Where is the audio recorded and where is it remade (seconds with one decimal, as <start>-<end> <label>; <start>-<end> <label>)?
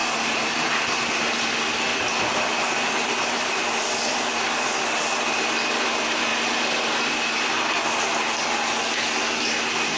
0.0-0.7 remade; 0.7-1.9 recorded; 1.9-4.3 remade; 4.3-10.0 recorded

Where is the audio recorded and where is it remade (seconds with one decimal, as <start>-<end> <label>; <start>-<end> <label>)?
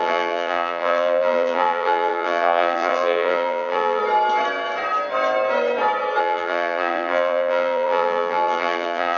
0.0-4.0 remade; 4.0-6.2 recorded; 6.2-9.2 remade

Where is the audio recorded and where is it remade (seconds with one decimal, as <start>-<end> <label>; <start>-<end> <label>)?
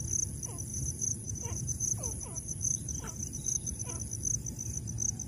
0.0-0.7 recorded; 0.7-3.9 remade; 3.9-5.3 recorded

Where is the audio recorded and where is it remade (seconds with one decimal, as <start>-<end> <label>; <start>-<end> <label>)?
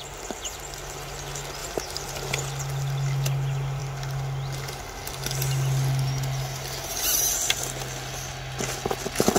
0.0-1.6 recorded; 1.6-2.1 remade; 2.1-9.4 recorded